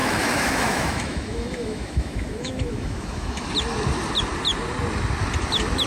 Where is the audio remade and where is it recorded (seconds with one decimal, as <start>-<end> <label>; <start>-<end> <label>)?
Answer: 0.0-3.5 remade; 3.5-5.9 recorded